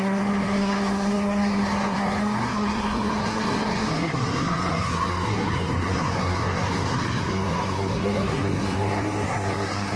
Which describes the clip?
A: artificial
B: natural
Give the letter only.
A